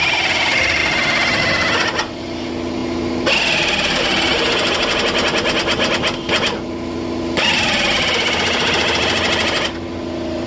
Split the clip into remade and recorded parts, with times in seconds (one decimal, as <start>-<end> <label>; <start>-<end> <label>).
0.0-10.5 recorded